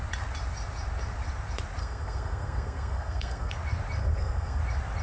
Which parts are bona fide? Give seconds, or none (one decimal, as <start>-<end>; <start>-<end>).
0.0-1.8; 3.5-4.0; 4.6-5.0